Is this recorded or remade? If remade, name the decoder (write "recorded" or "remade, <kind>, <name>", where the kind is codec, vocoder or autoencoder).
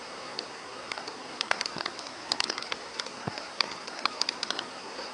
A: remade, codec, SNAC